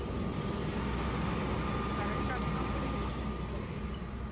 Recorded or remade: recorded